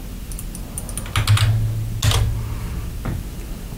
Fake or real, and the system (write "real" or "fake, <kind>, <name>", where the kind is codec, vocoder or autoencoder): real